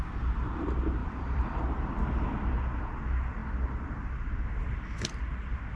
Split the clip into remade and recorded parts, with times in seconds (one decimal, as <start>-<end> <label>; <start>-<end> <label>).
0.0-1.0 recorded; 1.0-1.6 remade; 1.6-5.8 recorded